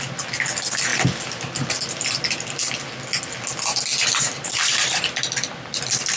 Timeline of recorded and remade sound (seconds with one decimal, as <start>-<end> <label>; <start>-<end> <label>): 0.0-3.9 recorded; 3.9-6.2 remade